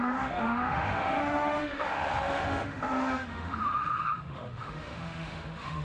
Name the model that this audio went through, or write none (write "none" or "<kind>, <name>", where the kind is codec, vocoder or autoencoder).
autoencoder, DAC-VAE